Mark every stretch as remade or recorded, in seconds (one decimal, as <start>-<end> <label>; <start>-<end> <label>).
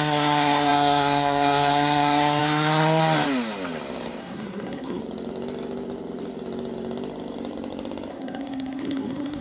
0.0-3.0 remade; 3.0-4.2 recorded; 4.2-5.0 remade; 5.0-8.1 recorded; 8.1-9.4 remade